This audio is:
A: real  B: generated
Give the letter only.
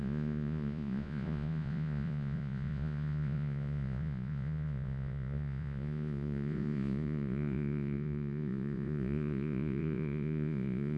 B